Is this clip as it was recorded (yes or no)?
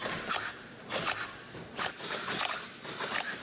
no